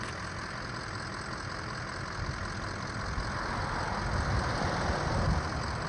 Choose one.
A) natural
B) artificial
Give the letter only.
A